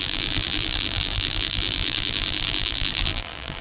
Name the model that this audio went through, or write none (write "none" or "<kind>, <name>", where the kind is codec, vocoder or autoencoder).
vocoder, BigVGAN v2